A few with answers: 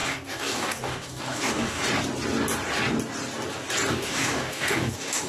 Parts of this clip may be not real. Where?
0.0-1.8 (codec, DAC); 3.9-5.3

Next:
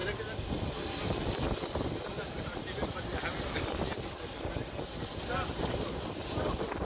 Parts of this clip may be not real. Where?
none

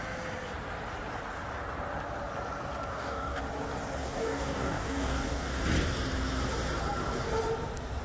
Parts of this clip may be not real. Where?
2.9-3.4 (codec, DAC); 4.0-5.6

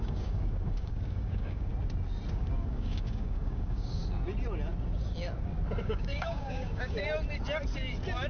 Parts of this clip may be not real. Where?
0.0-1.7 (codec, DAC); 2.3-4.0; 5.8-7.0

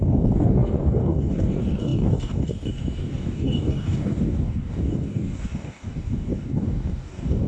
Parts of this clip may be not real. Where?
0.0-7.5 (codec, DAC)